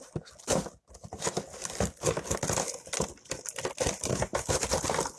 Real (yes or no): yes